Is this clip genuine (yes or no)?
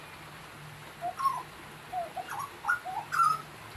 yes